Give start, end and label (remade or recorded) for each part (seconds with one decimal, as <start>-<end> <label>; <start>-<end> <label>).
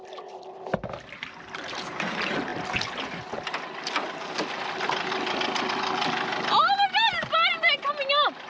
0.0-8.5 recorded